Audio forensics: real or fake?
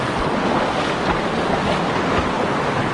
real